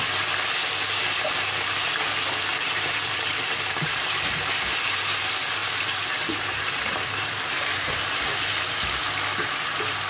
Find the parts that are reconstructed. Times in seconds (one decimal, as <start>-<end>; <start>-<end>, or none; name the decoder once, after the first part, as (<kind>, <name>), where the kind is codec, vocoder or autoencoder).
2.5-4.4 (vocoder, BigVGAN v2); 5.6-8.2